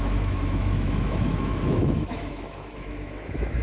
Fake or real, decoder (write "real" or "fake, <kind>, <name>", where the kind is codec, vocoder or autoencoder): fake, autoencoder, DAC-VAE